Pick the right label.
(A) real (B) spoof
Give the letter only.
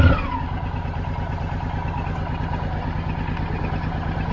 A